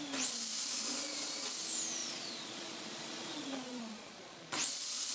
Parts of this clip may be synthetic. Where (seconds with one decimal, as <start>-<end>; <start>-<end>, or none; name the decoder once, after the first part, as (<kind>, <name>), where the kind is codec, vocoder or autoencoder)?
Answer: 2.0-5.1 (vocoder, Vocos)